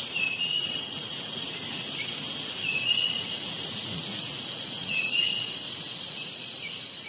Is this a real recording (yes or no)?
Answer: no